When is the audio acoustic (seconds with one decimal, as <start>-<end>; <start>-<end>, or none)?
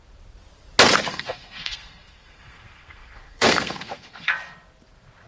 0.0-1.1; 4.3-5.3